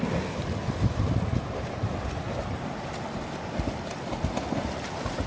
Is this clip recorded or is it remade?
recorded